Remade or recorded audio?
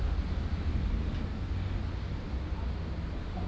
recorded